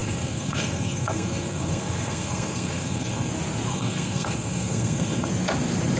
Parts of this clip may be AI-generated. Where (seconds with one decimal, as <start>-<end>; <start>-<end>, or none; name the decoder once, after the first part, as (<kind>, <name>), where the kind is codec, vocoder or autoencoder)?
0.0-3.3 (codec, SNAC); 3.7-5.3